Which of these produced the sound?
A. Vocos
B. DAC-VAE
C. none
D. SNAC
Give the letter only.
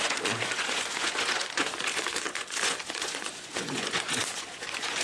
A